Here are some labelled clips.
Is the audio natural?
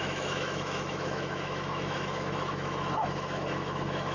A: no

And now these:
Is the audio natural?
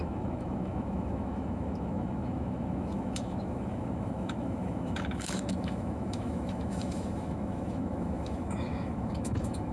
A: no